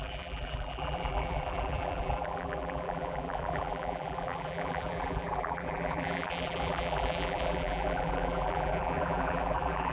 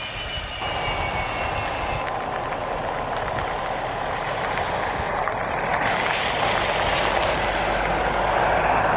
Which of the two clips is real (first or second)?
second